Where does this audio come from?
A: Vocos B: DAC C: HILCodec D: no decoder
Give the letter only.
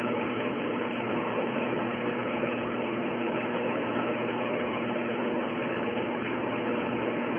C